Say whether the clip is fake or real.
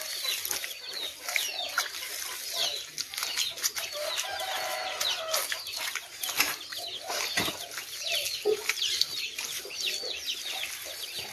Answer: real